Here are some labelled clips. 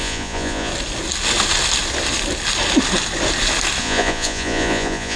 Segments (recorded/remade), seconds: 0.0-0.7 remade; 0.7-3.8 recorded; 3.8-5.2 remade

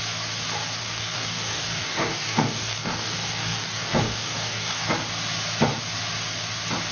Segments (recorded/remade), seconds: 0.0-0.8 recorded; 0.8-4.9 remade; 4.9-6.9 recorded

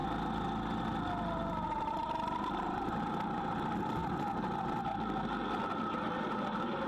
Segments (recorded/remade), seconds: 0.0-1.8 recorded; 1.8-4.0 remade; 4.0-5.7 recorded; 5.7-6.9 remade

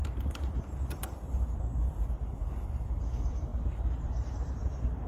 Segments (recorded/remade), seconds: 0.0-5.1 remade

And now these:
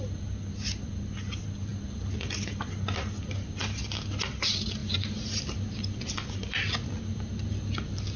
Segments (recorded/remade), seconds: 0.0-8.2 recorded